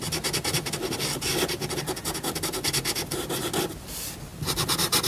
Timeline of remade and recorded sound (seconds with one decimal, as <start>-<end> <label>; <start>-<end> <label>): 0.0-5.1 recorded